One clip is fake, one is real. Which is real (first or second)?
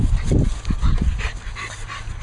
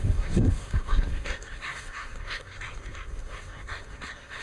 first